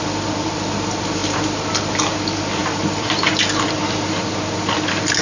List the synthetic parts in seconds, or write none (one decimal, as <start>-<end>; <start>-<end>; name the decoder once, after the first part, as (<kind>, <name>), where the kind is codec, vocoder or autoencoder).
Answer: 2.6-3.3 (vocoder, BigVGAN v2)